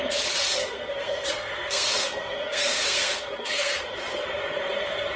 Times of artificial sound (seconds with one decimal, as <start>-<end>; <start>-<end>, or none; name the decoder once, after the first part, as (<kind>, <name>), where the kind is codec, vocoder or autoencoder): 0.6-3.7 (codec, SNAC)